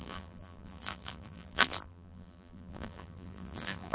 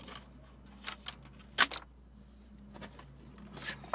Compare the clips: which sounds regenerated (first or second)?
first